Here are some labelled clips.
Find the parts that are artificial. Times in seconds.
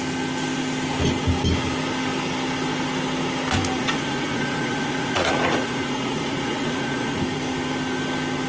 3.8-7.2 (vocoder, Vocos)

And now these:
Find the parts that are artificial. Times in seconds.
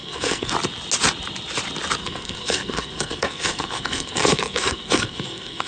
0.0-0.5 (codec, SNAC); 2.0-5.7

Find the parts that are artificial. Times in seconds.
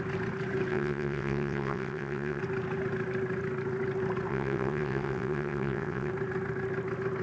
0.7-2.4 (vocoder, WaveNeXt); 4.3-6.1